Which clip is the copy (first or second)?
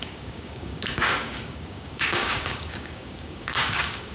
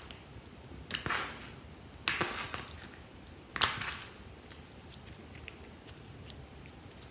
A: first